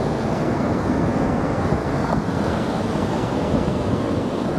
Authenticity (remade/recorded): remade